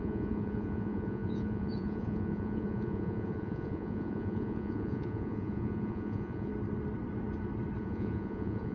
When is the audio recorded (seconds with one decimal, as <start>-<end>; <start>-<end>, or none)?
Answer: 6.5-7.8